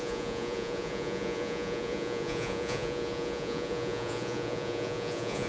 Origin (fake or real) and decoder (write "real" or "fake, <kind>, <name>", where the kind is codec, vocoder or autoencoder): fake, vocoder, Vocos